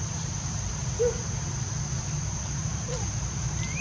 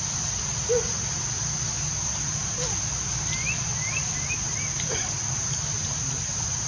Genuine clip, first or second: second